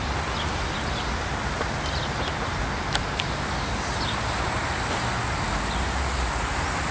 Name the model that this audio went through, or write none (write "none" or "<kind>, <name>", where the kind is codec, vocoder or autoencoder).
none